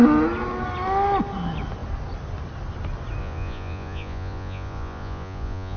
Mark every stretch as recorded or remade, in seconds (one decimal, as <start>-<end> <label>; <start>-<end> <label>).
0.0-3.2 recorded; 3.2-5.8 remade